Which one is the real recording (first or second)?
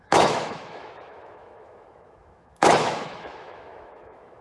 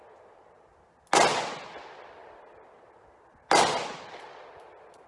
second